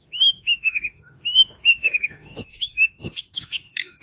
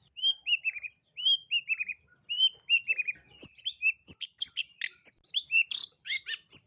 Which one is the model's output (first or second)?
first